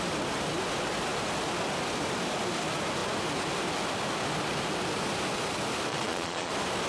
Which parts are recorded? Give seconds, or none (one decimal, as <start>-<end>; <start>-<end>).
0.0-5.9; 6.5-6.9